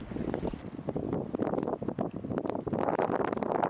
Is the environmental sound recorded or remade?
recorded